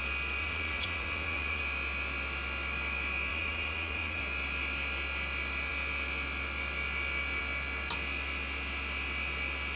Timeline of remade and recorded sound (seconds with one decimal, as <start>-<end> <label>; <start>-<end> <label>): 0.0-0.4 recorded; 0.4-1.6 remade; 1.6-3.3 recorded; 3.3-4.2 remade; 4.2-9.8 recorded